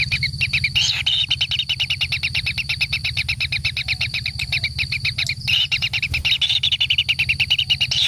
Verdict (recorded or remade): recorded